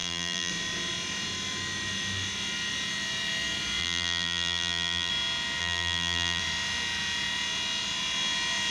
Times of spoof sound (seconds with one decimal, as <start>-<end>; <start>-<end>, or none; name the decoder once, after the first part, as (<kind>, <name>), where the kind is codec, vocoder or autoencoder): 0.0-0.5 (vocoder, BigVGAN v2); 3.8-5.1; 5.6-6.4